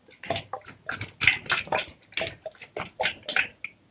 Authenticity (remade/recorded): recorded